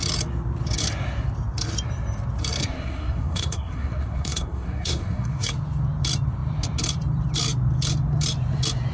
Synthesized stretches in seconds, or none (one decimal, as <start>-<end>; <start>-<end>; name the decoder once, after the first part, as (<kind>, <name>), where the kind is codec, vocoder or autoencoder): 2.6-5.5 (codec, SNAC)